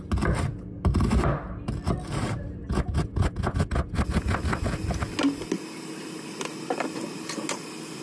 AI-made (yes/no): no